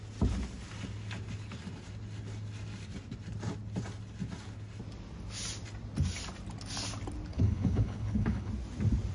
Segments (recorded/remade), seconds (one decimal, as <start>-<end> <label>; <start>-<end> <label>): 0.0-7.3 recorded; 7.3-8.5 remade; 8.5-9.1 recorded